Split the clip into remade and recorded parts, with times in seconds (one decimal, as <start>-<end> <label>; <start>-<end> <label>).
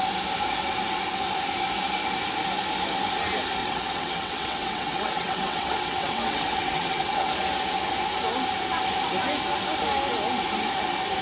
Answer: 0.0-3.6 recorded; 3.6-7.3 remade; 7.3-11.2 recorded